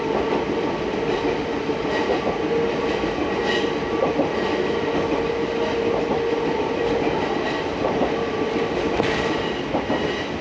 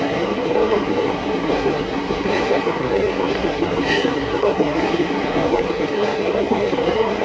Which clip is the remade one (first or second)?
second